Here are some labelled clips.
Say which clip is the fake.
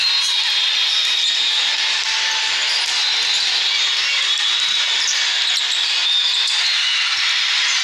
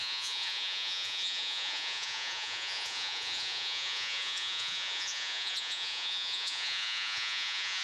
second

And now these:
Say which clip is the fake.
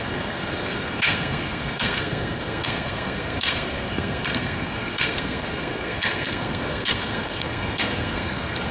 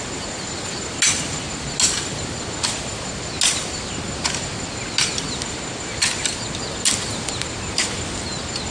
first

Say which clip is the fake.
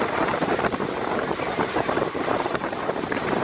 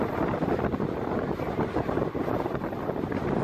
first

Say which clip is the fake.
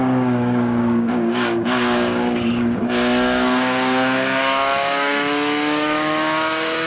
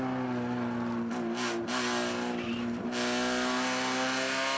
first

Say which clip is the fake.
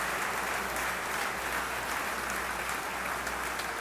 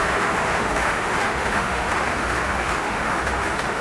second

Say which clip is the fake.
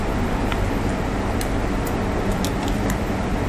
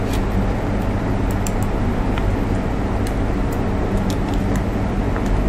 first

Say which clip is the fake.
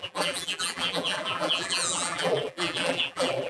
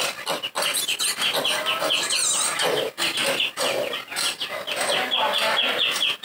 first